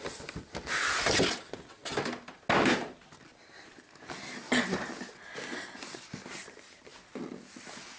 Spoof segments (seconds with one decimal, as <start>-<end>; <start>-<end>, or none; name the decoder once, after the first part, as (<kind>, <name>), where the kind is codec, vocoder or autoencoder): none